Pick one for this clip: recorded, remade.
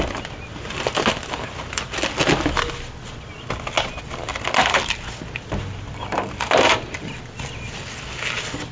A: recorded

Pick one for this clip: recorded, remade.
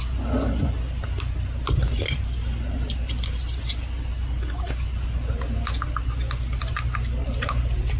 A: recorded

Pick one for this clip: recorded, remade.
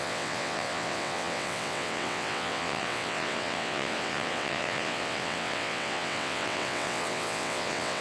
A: remade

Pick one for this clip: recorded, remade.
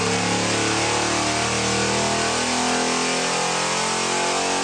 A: recorded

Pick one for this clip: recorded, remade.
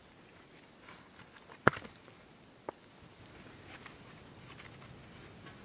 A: recorded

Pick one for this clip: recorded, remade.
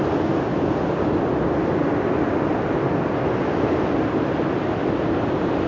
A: recorded